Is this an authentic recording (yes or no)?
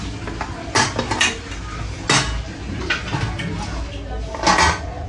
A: yes